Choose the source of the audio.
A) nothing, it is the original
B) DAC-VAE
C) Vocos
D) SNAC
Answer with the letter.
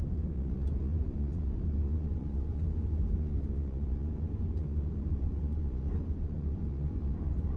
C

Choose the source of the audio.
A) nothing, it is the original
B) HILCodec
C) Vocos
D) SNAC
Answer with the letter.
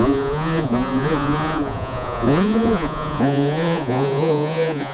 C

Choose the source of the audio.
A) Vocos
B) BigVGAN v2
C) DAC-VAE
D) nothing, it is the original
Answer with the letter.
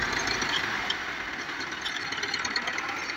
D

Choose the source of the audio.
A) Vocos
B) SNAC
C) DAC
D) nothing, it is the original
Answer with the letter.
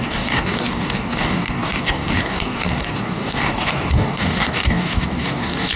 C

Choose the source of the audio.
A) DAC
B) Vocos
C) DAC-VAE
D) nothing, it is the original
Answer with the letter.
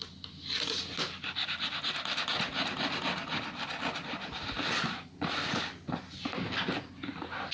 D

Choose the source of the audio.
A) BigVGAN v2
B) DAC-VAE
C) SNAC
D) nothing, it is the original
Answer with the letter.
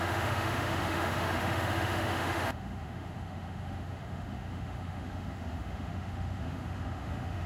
B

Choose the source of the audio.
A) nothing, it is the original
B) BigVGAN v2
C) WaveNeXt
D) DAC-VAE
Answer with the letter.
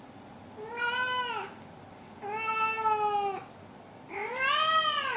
A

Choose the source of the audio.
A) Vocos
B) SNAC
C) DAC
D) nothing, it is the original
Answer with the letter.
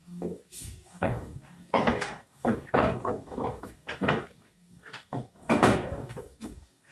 C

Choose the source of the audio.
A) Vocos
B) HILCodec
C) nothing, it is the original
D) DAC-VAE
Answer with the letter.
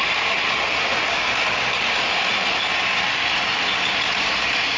C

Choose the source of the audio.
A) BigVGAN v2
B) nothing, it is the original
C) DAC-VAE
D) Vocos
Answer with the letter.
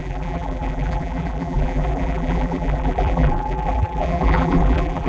A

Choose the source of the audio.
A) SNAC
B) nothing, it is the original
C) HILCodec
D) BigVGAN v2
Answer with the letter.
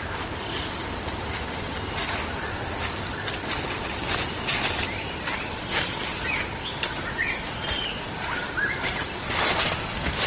B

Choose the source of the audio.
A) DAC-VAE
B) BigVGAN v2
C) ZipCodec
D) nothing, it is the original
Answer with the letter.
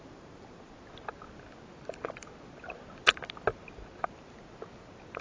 D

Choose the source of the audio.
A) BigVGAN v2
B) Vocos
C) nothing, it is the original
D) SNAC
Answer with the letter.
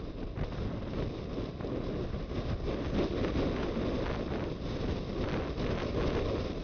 C